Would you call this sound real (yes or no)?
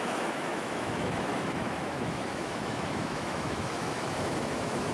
no